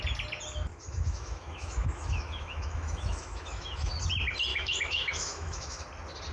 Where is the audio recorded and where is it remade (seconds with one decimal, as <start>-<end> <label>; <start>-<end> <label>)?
0.0-0.7 recorded; 0.7-3.9 remade; 3.9-4.5 recorded; 4.5-5.8 remade; 5.8-6.3 recorded